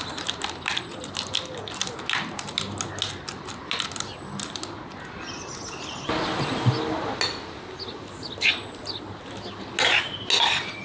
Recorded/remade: recorded